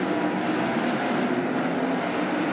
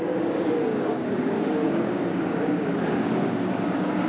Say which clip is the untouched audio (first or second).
first